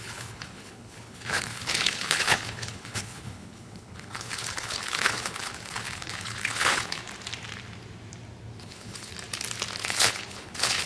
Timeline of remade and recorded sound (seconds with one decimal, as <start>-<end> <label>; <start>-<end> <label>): 0.0-7.0 remade; 7.0-8.6 recorded; 8.6-9.1 remade; 9.1-9.8 recorded; 9.8-10.9 remade

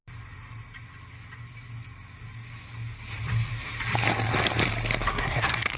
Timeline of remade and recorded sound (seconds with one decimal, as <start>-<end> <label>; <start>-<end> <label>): 0.0-5.1 recorded; 5.1-5.8 remade

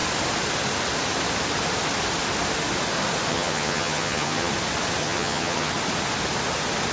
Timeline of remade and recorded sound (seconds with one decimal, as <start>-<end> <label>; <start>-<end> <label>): 0.0-3.3 recorded; 3.3-4.5 remade; 4.5-5.0 recorded; 5.0-5.7 remade; 5.7-6.9 recorded

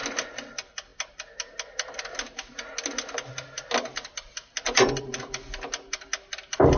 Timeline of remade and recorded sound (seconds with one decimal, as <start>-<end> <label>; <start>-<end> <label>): 0.0-6.8 recorded

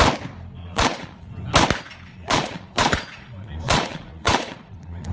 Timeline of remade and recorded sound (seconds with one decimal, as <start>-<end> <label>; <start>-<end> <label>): 0.0-0.6 recorded; 0.6-1.3 remade; 1.3-2.1 recorded; 2.1-5.1 remade